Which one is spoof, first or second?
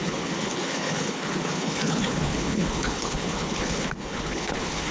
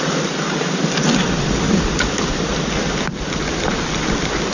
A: first